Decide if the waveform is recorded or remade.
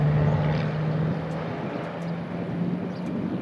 recorded